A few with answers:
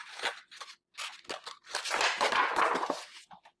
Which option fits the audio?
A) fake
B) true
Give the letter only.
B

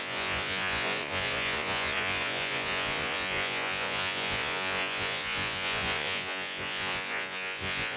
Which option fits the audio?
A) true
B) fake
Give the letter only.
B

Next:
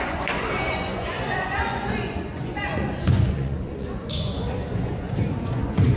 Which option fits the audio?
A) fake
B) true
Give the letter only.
A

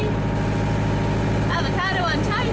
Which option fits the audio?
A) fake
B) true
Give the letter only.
B